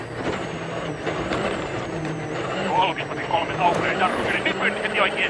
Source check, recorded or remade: remade